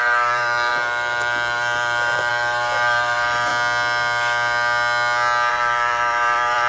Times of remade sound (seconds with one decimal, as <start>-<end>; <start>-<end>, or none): 0.0-3.5; 5.5-6.7